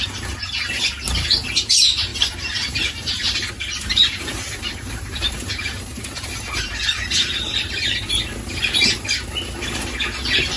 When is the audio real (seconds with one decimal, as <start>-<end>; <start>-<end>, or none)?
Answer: 0.0-2.1; 3.5-4.0; 8.0-10.6